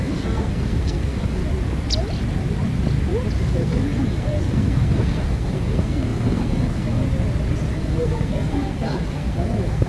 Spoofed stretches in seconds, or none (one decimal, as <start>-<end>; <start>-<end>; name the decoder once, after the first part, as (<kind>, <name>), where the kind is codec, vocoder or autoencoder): 0.0-1.4 (codec, SNAC); 3.4-7.0; 7.7-9.9